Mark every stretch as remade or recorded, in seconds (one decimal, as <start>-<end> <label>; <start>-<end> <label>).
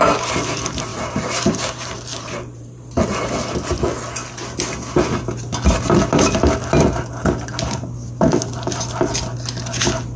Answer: 0.0-0.9 recorded; 0.9-3.3 remade; 3.3-10.2 recorded